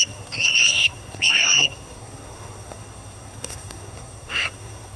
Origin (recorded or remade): remade